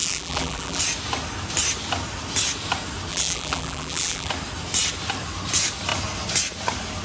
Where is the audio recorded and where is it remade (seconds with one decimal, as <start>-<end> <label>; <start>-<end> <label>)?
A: 0.0-0.8 remade; 0.8-3.1 recorded; 3.1-4.3 remade; 4.3-7.0 recorded